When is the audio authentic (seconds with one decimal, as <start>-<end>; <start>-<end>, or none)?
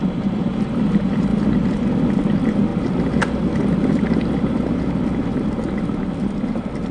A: 0.0-6.9